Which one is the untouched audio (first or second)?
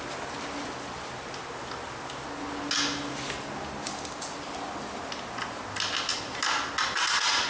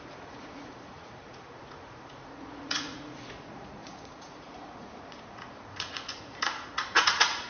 first